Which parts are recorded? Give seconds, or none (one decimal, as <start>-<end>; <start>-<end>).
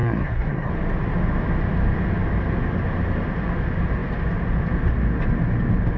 0.7-6.0